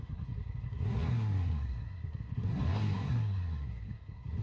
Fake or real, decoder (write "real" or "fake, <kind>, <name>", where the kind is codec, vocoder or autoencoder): fake, codec, SNAC